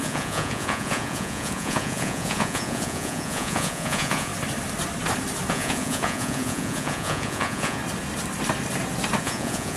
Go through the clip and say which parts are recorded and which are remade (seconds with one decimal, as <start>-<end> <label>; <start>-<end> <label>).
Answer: 0.0-4.3 remade; 4.3-5.5 recorded; 5.5-7.8 remade; 7.8-9.2 recorded; 9.2-9.8 remade